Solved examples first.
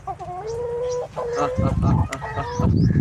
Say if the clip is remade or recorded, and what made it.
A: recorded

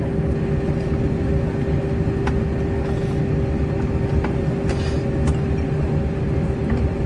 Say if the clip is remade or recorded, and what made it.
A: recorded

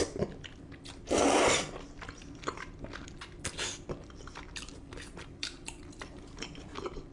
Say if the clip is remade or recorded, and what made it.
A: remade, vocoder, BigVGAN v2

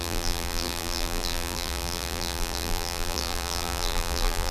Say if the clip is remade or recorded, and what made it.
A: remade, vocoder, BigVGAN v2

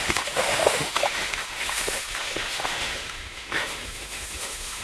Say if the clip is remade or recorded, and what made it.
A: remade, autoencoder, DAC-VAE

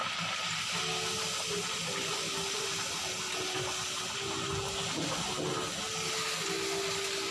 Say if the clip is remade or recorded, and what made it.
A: recorded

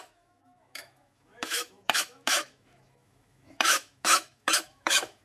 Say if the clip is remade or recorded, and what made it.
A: remade, autoencoder, DAC-VAE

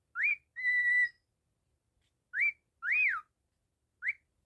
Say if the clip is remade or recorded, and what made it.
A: recorded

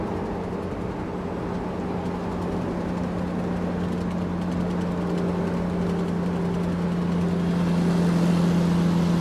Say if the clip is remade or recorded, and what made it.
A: recorded